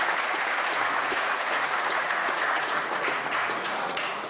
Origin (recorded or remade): remade